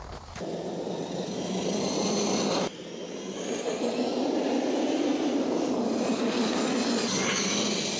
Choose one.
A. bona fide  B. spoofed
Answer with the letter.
A